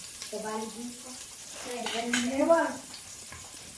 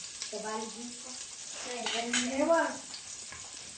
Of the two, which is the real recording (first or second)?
second